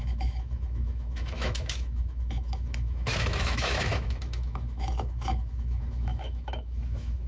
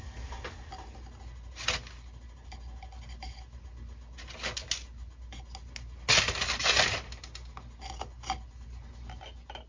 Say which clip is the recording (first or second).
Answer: second